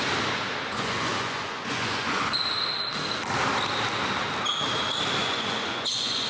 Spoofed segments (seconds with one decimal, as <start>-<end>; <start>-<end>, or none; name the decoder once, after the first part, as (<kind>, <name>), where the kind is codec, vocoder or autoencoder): 0.7-2.2 (vocoder, Vocos); 5.2-6.3